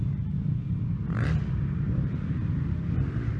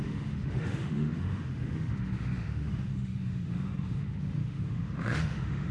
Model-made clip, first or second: second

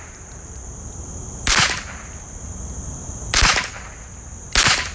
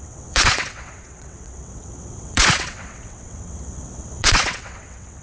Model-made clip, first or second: second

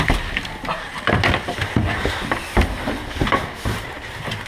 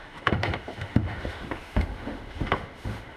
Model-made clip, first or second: second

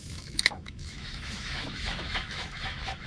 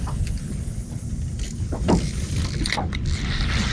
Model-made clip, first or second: first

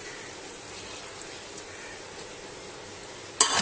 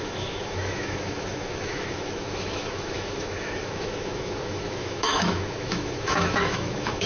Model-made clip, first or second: second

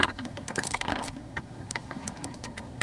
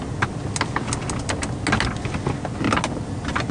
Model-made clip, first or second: first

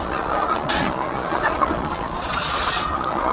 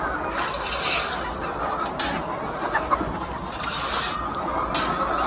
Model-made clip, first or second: first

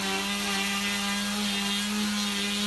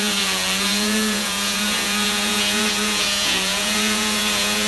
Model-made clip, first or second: second